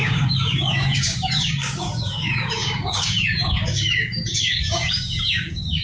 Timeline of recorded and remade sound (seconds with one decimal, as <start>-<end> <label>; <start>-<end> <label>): 0.0-5.8 remade